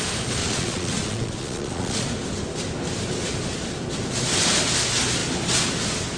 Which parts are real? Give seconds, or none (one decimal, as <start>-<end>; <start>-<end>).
0.0-0.4; 2.1-6.2